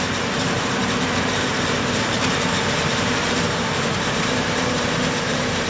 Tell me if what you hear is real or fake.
fake